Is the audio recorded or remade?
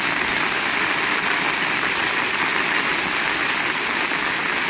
recorded